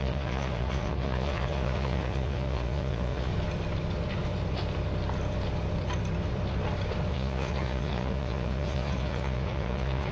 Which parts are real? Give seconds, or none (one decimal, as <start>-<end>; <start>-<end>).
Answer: 3.3-7.1